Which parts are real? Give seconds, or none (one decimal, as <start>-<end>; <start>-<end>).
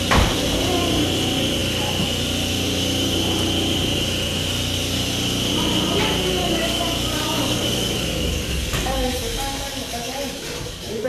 0.0-6.4